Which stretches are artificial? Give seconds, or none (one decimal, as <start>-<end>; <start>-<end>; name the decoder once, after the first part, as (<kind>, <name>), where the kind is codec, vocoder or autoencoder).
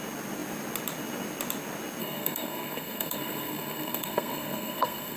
2.0-5.2 (codec, SNAC)